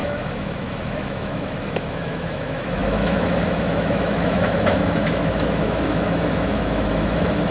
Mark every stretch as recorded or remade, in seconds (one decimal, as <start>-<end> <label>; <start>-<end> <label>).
0.0-7.5 remade